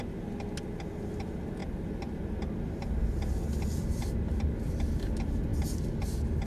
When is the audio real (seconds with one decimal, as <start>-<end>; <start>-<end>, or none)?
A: 0.0-6.5